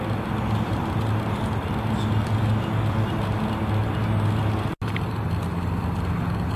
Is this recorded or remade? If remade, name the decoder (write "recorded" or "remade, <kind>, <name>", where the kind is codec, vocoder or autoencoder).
recorded